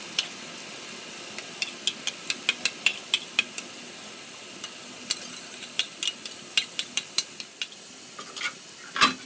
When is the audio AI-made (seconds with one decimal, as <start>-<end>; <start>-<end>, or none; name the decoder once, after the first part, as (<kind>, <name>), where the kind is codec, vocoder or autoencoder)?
none